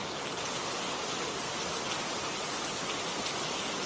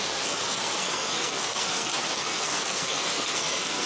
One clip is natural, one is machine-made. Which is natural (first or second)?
first